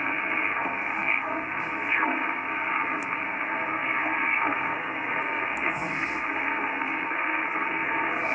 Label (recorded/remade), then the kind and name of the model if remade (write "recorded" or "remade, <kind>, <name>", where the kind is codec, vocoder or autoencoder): remade, codec, SNAC